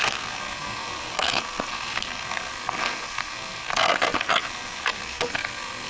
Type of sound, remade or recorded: remade